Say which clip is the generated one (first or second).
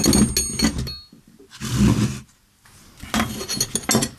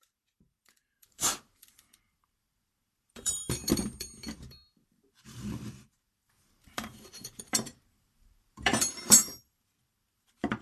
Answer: second